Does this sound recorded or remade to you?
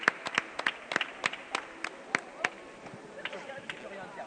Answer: recorded